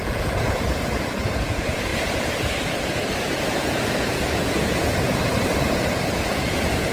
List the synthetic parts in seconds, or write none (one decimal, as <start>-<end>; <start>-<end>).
0.0-6.9